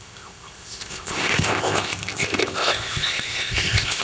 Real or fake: fake